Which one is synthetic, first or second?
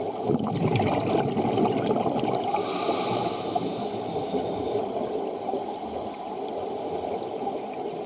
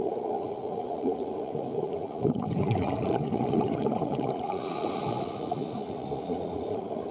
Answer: second